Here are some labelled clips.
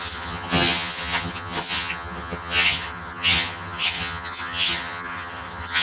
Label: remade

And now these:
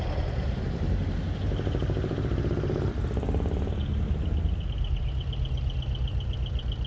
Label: recorded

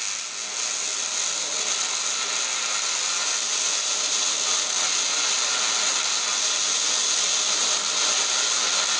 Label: recorded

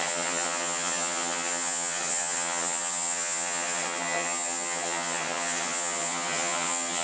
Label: remade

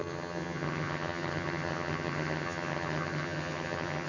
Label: remade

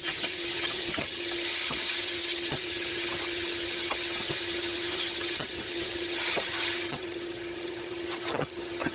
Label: remade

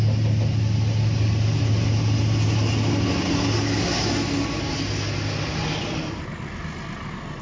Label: recorded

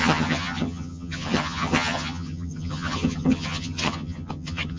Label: remade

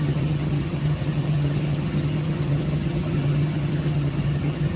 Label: remade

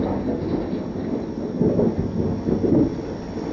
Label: recorded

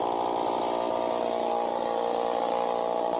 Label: recorded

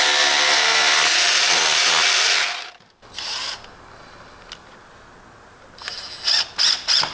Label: recorded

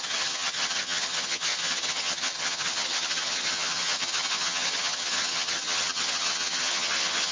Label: remade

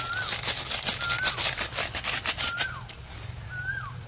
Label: recorded